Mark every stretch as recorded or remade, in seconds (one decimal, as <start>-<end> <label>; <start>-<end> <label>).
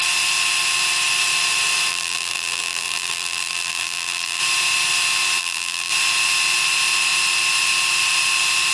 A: 0.0-1.9 recorded; 1.9-4.4 remade; 4.4-5.4 recorded; 5.4-5.9 remade; 5.9-8.7 recorded